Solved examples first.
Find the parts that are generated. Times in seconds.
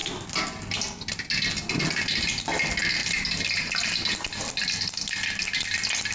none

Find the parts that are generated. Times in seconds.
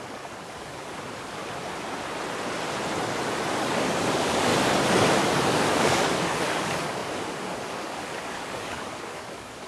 0.0-1.4 (codec, DAC); 3.6-4.5; 5.2-9.7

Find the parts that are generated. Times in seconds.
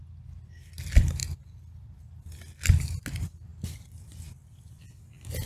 none